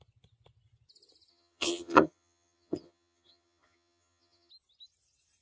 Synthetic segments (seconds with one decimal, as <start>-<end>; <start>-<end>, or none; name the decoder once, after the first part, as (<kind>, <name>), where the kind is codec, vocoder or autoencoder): 1.3-4.5 (vocoder, HiFi-GAN)